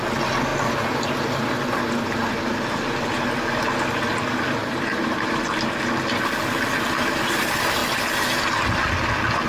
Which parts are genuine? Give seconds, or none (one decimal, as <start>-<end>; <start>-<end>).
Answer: 0.0-4.6; 6.2-9.5